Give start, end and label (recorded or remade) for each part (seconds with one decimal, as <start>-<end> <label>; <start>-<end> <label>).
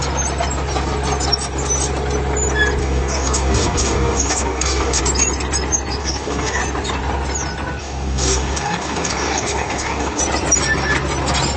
0.0-2.8 recorded; 2.8-5.0 remade; 5.0-6.0 recorded; 6.0-6.6 remade; 6.6-7.8 recorded; 7.8-10.2 remade; 10.2-11.6 recorded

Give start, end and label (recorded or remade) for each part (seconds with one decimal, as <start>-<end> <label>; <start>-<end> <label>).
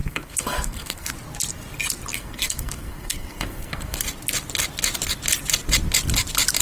0.0-1.1 remade; 1.1-2.1 recorded; 2.1-4.0 remade; 4.0-6.6 recorded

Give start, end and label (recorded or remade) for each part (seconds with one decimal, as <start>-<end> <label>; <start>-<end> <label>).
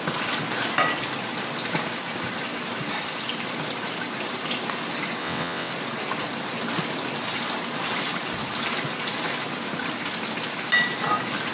0.0-5.2 recorded; 5.2-5.7 remade; 5.7-11.5 recorded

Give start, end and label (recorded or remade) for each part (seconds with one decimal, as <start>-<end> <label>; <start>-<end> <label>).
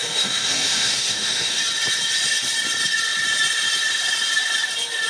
0.0-1.6 remade; 1.6-5.1 recorded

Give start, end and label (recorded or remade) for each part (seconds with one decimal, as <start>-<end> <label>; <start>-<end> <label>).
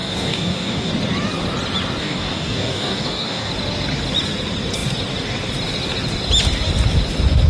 0.0-0.9 remade; 0.9-2.0 recorded; 2.0-3.5 remade; 3.5-7.5 recorded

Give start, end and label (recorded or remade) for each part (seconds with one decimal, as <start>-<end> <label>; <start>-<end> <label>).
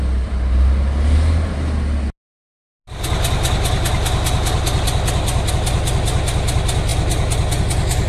0.0-8.1 recorded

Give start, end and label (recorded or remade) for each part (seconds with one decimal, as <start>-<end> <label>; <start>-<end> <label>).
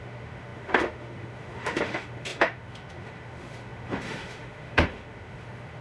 0.0-5.8 remade